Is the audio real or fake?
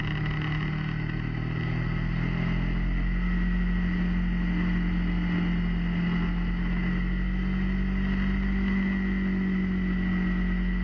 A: real